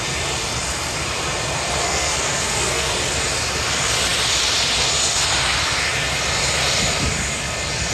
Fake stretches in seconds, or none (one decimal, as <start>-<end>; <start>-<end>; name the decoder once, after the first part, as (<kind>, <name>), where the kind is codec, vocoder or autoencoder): 1.8-2.9 (codec, SNAC)